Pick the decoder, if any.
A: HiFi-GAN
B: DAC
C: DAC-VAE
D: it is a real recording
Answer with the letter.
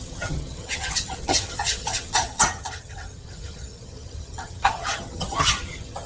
A